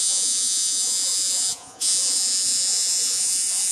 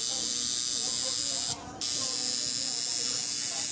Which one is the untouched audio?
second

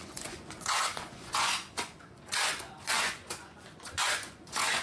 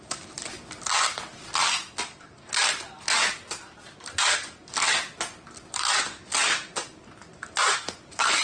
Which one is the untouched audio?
second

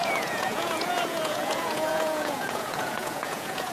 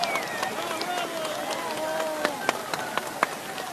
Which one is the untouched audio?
second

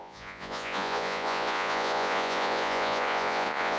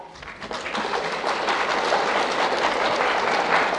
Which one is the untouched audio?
second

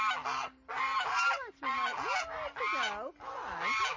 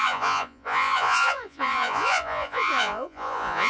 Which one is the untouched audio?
first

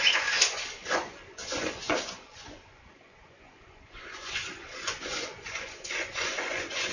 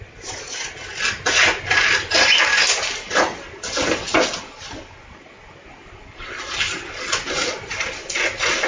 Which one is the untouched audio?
second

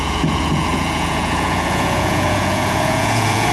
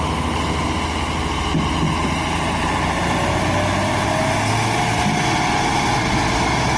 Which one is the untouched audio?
second